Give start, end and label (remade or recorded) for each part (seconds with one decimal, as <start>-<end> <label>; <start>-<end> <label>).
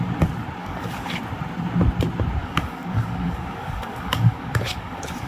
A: 0.0-0.6 recorded; 0.6-1.2 remade; 1.2-2.4 recorded; 2.4-5.3 remade